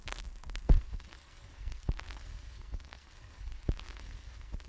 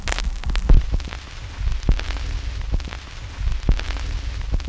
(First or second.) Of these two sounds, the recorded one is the second